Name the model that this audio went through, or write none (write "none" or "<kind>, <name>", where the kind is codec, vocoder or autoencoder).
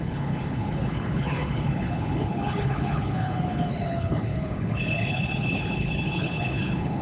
codec, HILCodec